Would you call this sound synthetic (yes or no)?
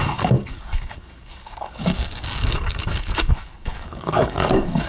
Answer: yes